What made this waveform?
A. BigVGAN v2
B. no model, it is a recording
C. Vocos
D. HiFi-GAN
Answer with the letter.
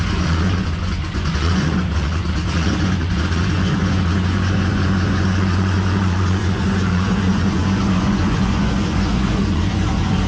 C